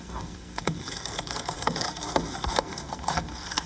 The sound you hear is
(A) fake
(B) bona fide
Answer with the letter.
A